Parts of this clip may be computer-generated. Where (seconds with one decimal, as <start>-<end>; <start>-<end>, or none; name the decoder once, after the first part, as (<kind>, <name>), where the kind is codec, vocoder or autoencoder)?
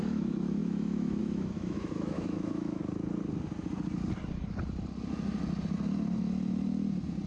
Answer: 0.0-2.8 (autoencoder, DAC-VAE)